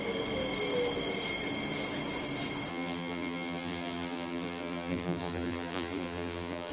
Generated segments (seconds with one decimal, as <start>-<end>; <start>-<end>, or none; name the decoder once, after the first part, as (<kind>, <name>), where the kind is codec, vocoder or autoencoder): 2.7-6.7 (vocoder, BigVGAN v2)